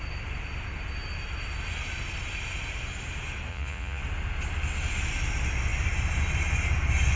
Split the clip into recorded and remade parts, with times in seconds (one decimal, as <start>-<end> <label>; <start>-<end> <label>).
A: 0.0-3.5 recorded; 3.5-4.0 remade; 4.0-7.2 recorded